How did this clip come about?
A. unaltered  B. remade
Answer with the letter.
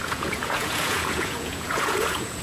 B